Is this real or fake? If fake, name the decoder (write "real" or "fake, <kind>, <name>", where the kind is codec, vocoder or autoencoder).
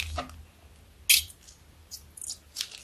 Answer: real